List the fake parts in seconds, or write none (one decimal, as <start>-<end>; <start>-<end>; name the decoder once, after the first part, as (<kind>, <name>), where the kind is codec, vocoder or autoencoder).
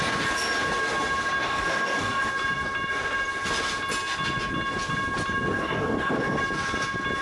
1.4-2.3 (codec, DAC); 5.5-6.4